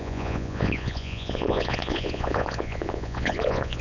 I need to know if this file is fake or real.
fake